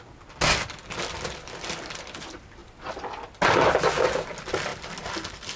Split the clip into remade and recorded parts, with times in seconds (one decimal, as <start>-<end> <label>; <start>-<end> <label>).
0.0-5.6 recorded